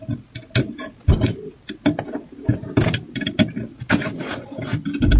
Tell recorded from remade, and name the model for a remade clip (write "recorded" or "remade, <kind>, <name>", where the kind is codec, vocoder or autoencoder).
recorded